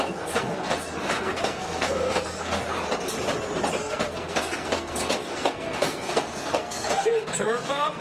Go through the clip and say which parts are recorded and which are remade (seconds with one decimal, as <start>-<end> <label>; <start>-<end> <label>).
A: 0.0-2.6 remade; 2.6-3.7 recorded; 3.7-8.0 remade